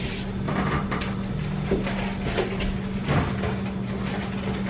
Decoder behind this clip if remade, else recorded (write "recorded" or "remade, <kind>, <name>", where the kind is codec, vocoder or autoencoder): recorded